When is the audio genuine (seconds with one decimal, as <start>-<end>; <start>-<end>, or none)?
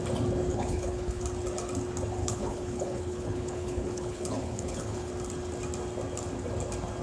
0.0-0.5; 1.2-2.2; 5.1-7.0